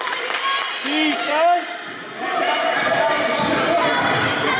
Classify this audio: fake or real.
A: real